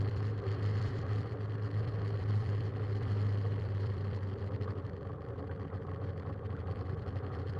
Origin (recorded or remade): remade